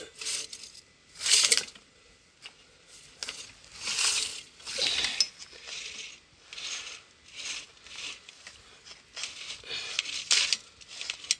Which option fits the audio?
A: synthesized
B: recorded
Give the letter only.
B